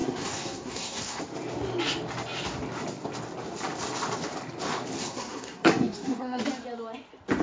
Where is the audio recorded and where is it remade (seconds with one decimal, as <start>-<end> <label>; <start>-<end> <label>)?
0.0-1.2 remade; 1.2-5.0 recorded; 5.0-6.4 remade; 6.4-7.4 recorded